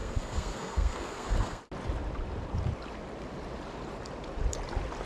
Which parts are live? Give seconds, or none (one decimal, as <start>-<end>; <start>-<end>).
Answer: 1.6-5.1